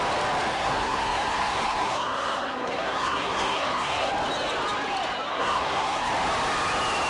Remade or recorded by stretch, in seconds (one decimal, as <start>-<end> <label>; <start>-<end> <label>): 0.0-0.5 recorded; 0.5-4.1 remade; 4.1-5.3 recorded; 5.3-6.1 remade; 6.1-7.1 recorded